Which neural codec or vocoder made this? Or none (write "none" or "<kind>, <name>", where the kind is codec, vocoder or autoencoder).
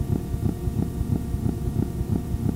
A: vocoder, BigVGAN v2